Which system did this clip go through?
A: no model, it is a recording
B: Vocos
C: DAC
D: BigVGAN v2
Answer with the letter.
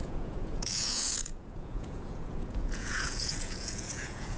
B